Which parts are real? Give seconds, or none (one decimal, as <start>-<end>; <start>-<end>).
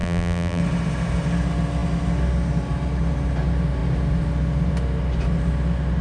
0.6-6.0